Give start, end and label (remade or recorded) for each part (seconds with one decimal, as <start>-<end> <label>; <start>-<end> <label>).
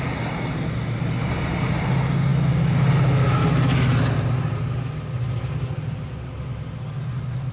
0.0-7.5 recorded